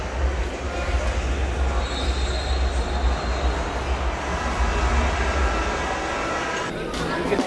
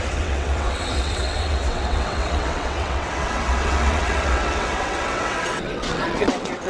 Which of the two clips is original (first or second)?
first